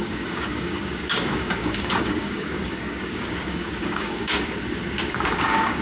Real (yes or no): no